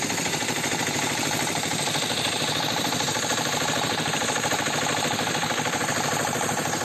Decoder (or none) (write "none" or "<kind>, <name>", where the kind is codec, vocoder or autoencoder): vocoder, BigVGAN v2